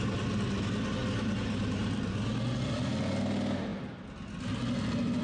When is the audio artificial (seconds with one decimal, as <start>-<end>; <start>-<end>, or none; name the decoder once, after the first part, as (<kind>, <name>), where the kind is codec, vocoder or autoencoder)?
none